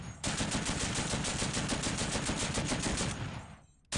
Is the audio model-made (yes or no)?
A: no